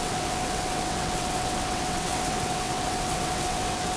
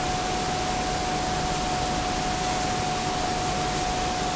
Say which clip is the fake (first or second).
first